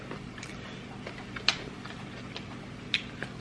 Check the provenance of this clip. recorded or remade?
recorded